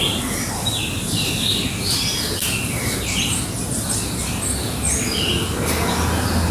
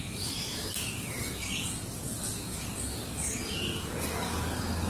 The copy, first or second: second